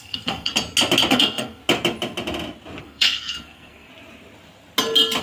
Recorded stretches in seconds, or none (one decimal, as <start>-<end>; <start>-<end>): 0.5-1.1; 1.6-2.8; 3.9-5.2